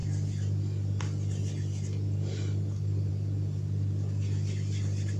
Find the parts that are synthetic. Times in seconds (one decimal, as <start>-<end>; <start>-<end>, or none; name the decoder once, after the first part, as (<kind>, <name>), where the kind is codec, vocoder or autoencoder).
none